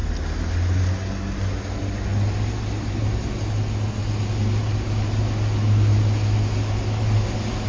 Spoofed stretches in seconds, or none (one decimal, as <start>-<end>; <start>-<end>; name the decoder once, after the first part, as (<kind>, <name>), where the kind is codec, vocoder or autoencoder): none